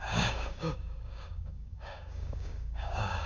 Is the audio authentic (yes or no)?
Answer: no